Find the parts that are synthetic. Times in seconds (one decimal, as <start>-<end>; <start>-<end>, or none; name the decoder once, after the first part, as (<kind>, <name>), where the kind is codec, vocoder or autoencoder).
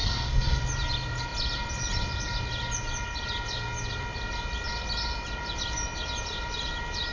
0.0-0.6 (codec, SNAC)